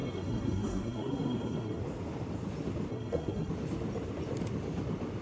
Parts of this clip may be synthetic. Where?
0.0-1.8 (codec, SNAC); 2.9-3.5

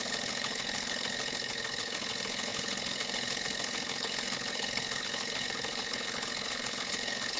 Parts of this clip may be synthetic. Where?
0.0-7.4 (codec, HILCodec)

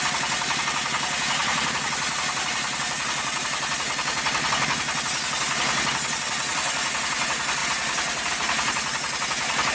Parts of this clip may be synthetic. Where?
1.4-3.4 (vocoder, BigVGAN v2); 6.5-7.1

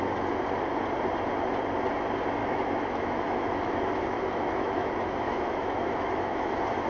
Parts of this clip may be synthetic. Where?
2.4-6.5 (autoencoder, DAC-VAE)

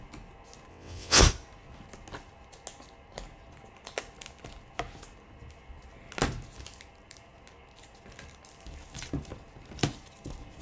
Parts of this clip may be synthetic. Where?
0.7-1.2 (vocoder, WaveNeXt)

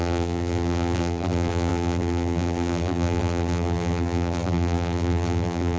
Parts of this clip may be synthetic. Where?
0.0-5.8 (vocoder, BigVGAN v2)